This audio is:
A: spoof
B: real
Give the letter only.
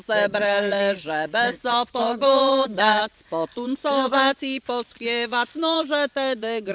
A